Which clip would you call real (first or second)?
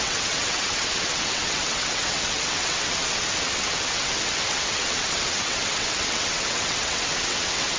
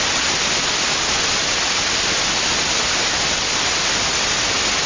second